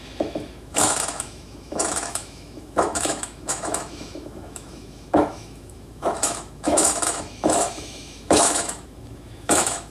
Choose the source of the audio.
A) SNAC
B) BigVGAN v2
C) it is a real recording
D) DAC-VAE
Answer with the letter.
D